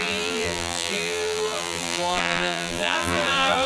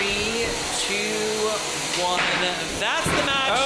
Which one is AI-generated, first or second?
first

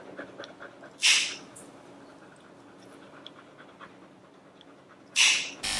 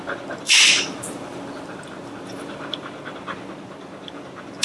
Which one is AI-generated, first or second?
second